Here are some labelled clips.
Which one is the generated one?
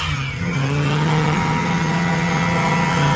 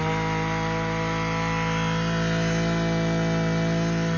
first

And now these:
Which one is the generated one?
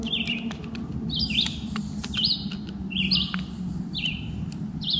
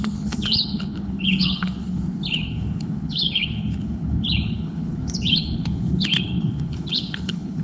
second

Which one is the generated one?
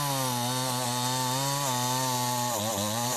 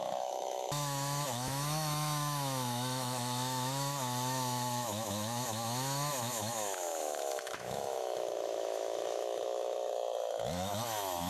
second